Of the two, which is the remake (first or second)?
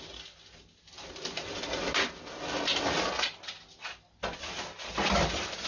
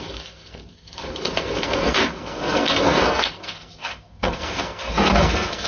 second